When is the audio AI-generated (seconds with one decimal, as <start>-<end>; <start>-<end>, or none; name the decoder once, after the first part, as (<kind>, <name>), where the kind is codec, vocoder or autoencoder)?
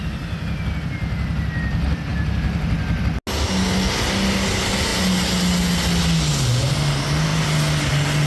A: none